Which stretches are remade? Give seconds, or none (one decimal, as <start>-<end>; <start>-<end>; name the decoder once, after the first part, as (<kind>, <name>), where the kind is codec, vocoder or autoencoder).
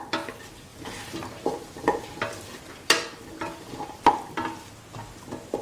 0.7-4.1 (vocoder, BigVGAN v2)